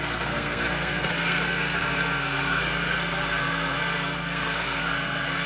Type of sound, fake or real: fake